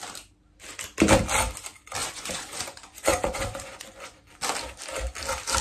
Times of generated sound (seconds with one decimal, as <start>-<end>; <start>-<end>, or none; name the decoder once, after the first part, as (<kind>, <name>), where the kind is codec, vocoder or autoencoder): 2.0-4.3 (vocoder, Vocos)